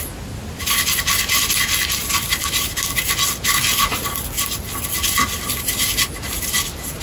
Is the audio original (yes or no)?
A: yes